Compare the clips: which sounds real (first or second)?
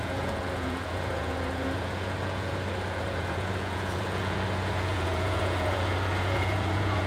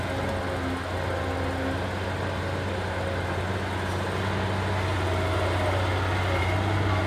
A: second